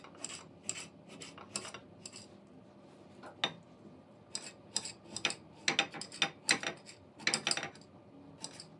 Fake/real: real